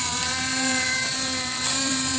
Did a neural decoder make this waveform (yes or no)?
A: yes